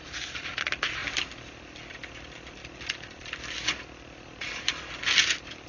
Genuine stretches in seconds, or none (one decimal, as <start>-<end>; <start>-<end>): 0.0-5.7